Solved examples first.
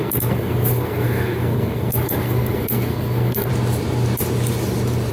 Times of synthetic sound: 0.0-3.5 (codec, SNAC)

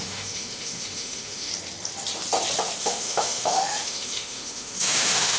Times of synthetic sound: 0.0-1.5 (autoencoder, DAC-VAE); 2.8-5.4

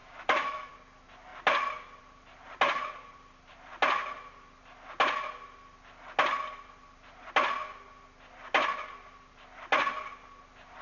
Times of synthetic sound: 0.0-0.7 (autoencoder, DAC-VAE)